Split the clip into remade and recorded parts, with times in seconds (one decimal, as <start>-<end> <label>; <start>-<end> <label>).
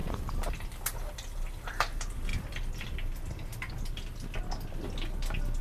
0.0-5.6 recorded